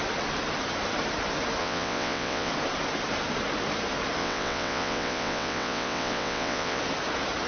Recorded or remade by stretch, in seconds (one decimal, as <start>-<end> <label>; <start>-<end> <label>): 0.0-1.6 recorded; 1.6-2.5 remade; 2.5-4.2 recorded; 4.2-6.8 remade; 6.8-7.5 recorded